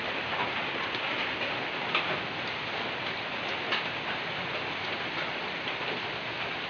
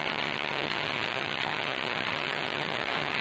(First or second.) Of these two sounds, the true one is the first